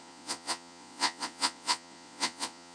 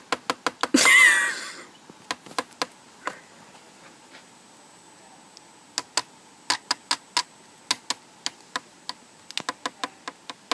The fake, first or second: first